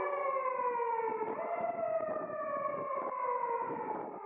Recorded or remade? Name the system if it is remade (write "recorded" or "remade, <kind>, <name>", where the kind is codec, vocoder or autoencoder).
recorded